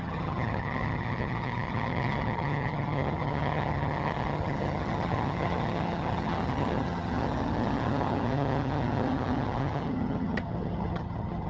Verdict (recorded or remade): remade